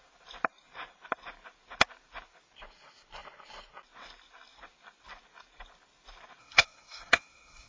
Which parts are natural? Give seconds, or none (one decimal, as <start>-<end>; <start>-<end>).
0.0-6.4